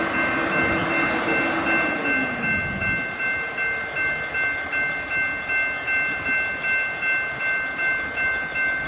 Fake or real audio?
real